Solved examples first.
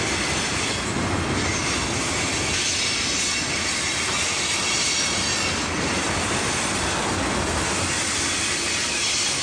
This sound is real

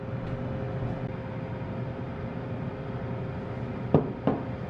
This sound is real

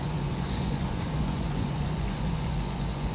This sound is fake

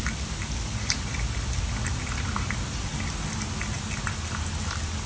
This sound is real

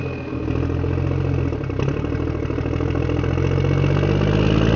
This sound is real